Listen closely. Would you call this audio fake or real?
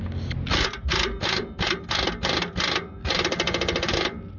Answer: real